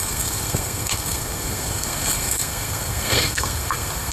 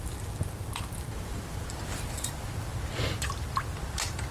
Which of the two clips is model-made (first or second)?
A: first